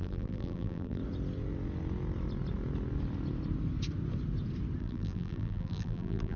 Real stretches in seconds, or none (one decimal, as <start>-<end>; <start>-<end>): 1.0-4.8